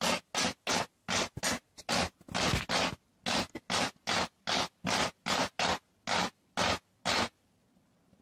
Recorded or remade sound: recorded